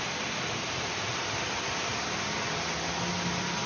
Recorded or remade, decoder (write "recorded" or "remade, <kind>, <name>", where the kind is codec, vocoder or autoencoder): recorded